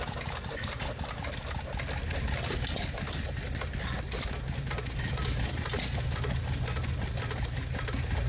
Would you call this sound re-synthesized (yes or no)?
no